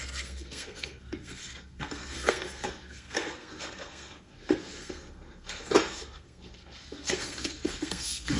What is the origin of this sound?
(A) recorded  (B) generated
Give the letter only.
B